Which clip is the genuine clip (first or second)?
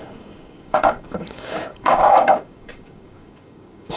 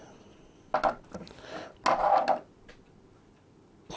second